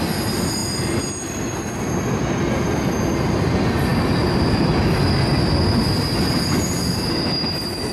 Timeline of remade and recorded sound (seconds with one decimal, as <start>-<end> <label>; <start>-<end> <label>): 0.0-7.9 recorded